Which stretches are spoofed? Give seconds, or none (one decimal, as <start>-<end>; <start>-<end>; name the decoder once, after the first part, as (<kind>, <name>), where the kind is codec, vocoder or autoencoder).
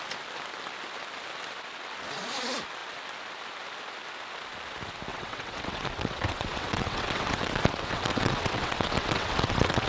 5.1-9.9 (vocoder, WaveNeXt)